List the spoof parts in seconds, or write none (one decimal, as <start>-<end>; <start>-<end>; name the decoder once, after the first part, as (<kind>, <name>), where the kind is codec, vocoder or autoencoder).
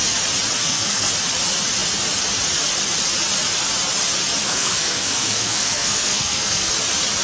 0.6-1.1 (codec, SNAC); 4.4-6.7